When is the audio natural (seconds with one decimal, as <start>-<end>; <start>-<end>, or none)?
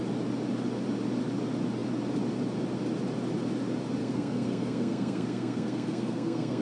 0.0-4.0